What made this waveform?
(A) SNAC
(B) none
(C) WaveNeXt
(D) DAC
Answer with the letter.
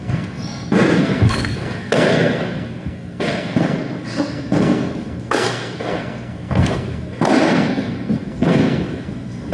A